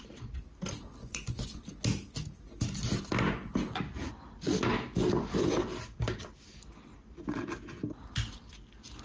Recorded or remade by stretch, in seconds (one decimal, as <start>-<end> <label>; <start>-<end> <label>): 0.0-1.0 recorded; 1.0-1.6 remade; 1.6-9.0 recorded